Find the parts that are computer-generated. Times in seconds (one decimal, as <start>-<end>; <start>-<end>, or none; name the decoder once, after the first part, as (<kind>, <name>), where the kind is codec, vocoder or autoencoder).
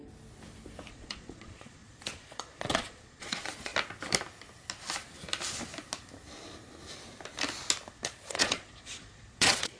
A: 0.9-3.7 (vocoder, Vocos); 7.9-9.8